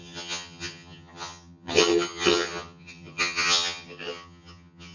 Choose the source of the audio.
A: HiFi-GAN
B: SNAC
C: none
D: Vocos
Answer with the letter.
A